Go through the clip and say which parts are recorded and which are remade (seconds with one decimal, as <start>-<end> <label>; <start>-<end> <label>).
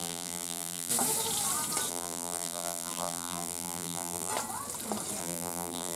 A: 0.0-0.9 remade; 0.9-1.9 recorded; 1.9-4.3 remade; 4.3-5.2 recorded; 5.2-6.0 remade